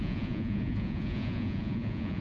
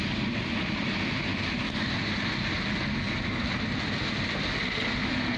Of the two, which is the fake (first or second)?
first